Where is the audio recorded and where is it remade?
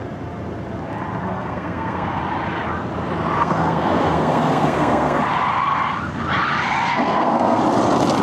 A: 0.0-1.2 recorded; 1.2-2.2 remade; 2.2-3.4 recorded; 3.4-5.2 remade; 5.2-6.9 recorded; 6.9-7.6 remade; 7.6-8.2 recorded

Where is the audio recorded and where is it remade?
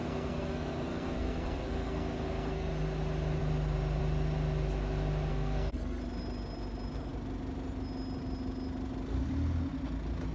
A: 0.0-2.7 remade; 2.7-5.3 recorded; 5.3-6.0 remade; 6.0-10.3 recorded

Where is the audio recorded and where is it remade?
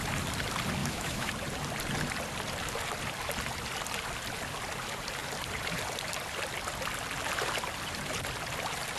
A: 0.0-0.8 recorded; 0.8-1.3 remade; 1.3-9.0 recorded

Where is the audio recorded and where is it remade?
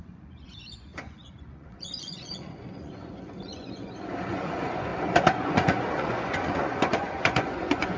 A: 0.0-4.9 remade; 4.9-5.4 recorded; 5.4-8.0 remade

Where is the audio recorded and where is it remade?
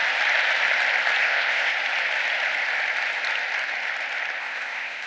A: 0.0-1.2 recorded; 1.2-1.7 remade; 1.7-4.4 recorded; 4.4-5.1 remade